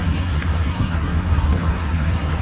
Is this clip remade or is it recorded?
remade